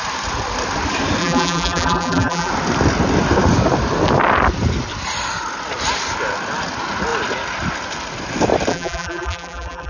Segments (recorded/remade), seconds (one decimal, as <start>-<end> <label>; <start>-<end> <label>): 0.0-1.2 recorded; 1.2-2.5 remade; 2.5-8.7 recorded; 8.7-9.9 remade